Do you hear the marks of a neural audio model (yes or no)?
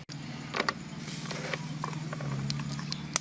no